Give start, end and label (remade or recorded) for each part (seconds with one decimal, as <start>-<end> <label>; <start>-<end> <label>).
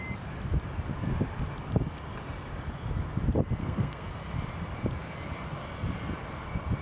0.0-3.6 recorded; 3.6-4.1 remade; 4.1-6.8 recorded